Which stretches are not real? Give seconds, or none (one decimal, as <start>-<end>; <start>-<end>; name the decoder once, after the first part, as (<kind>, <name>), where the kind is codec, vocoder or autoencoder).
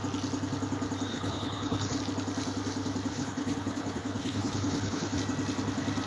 1.1-2.0 (codec, HILCodec); 3.1-5.2